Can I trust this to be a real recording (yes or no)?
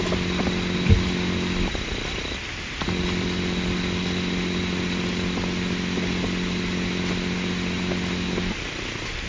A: yes